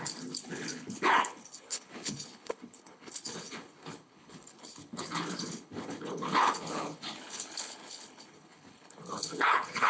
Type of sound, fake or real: fake